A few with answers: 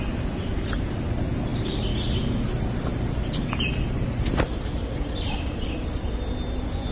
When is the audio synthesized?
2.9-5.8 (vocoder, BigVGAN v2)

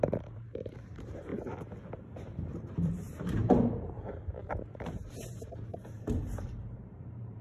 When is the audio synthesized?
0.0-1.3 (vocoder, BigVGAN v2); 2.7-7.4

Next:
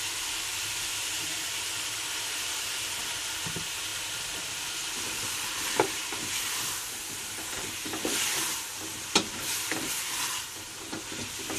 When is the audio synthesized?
0.0-8.9 (vocoder, BigVGAN v2); 10.2-11.6